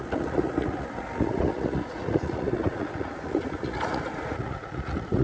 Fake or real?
fake